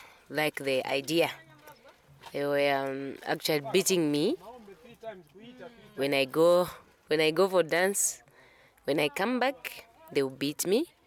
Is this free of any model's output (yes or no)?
yes